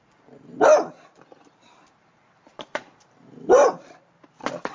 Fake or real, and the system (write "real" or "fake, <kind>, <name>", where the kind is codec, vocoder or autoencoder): fake, vocoder, BigVGAN v2